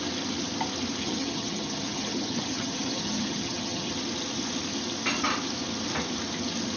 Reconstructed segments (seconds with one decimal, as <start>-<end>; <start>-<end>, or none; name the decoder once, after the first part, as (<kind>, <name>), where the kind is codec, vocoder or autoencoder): 1.0-3.9 (vocoder, HiFi-GAN)